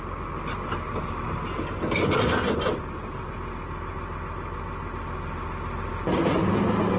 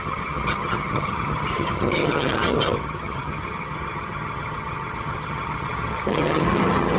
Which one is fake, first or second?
second